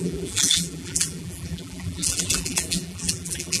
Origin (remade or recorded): remade